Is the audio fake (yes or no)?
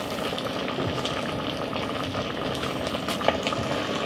no